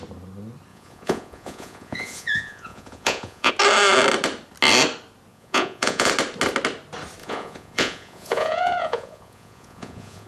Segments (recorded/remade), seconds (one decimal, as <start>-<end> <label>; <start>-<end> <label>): 0.0-0.7 recorded; 0.7-3.5 remade; 3.5-5.3 recorded; 5.3-6.1 remade; 6.1-7.2 recorded; 7.2-10.3 remade